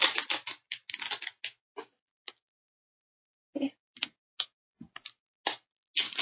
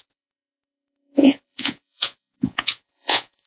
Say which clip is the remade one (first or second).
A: second